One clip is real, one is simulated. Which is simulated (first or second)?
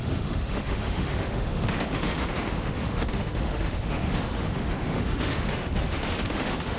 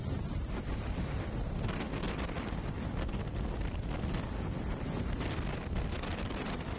first